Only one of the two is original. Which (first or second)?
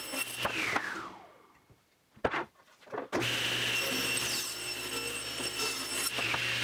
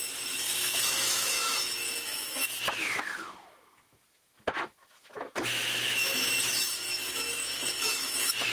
first